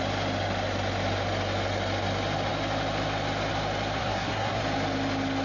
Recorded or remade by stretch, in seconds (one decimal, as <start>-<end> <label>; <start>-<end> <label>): 0.0-4.0 recorded; 4.0-4.6 remade; 4.6-5.4 recorded